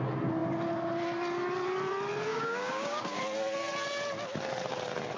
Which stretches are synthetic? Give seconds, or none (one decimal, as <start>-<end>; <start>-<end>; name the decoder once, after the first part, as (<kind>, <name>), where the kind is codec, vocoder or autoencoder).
2.3-3.2 (codec, DAC)